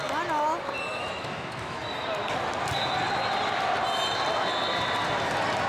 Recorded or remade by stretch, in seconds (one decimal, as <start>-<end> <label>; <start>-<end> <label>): 0.0-0.9 recorded; 0.9-1.8 remade; 1.8-5.7 recorded